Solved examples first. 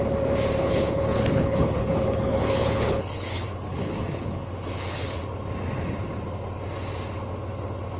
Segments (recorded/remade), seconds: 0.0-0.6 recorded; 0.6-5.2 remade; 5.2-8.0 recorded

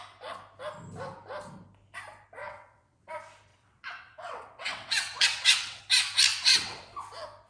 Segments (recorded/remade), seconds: 0.0-2.4 recorded; 2.4-3.1 remade; 3.1-3.5 recorded; 3.5-5.8 remade; 5.8-6.3 recorded; 6.3-7.0 remade; 7.0-7.5 recorded

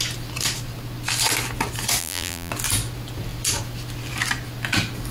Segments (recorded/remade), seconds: 0.0-2.0 recorded; 2.0-2.5 remade; 2.5-5.1 recorded

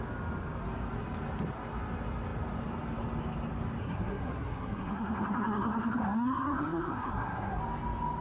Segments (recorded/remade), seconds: 0.0-3.8 recorded; 3.8-7.6 remade; 7.6-8.2 recorded

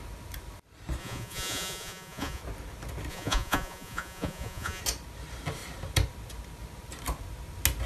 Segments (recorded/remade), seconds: 0.0-1.0 recorded; 1.0-2.4 remade; 2.4-3.1 recorded; 3.1-4.8 remade; 4.8-7.9 recorded

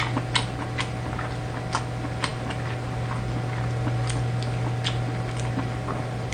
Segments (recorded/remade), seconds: 0.0-6.3 recorded

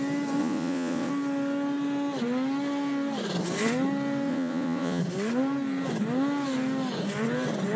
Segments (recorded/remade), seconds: 0.0-0.4 recorded; 0.4-1.1 remade; 1.1-4.3 recorded; 4.3-5.0 remade; 5.0-7.8 recorded

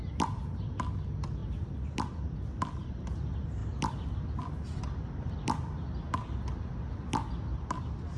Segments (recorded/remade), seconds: 0.0-1.4 recorded; 1.4-2.4 remade; 2.4-8.2 recorded